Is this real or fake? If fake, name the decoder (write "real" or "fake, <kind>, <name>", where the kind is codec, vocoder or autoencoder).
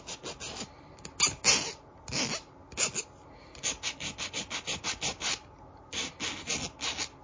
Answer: real